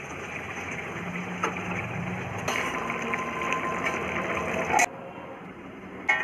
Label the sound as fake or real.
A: real